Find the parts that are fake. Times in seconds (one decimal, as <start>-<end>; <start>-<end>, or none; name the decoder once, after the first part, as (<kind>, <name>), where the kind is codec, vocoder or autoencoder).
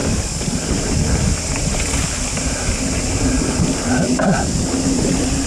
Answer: none